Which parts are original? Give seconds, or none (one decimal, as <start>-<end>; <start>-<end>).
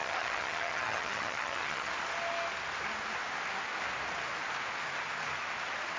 1.9-6.0